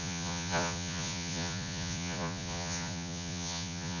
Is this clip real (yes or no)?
no